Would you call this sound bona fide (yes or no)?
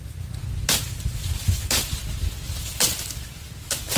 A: yes